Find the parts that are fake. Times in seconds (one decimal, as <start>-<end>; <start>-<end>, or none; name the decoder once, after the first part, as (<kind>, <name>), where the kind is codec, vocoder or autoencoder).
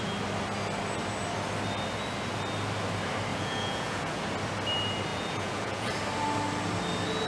3.3-4.2 (vocoder, Vocos); 5.1-5.9